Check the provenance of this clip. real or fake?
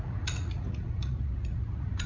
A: fake